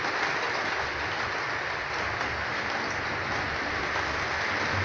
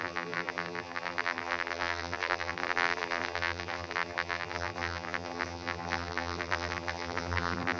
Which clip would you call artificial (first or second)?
second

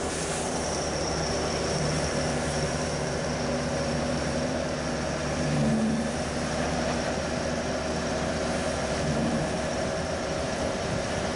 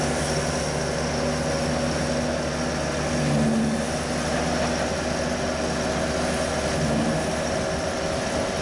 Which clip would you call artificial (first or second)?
first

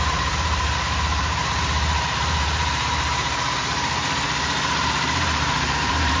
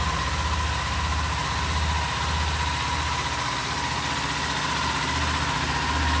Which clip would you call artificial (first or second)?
first